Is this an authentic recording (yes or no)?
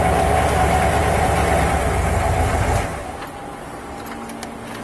yes